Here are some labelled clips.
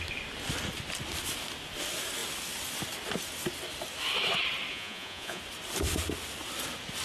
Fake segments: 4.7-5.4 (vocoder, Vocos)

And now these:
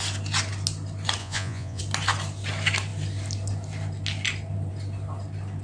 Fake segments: 1.2-1.8 (vocoder, Vocos)

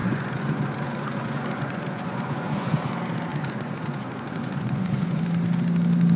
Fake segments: 0.0-2.9 (vocoder, Vocos); 3.3-5.2

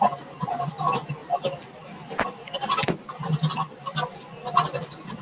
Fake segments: none

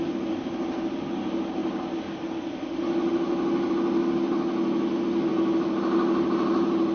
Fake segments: none